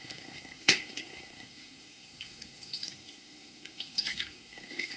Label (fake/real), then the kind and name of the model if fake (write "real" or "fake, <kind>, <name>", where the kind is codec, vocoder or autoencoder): fake, codec, SNAC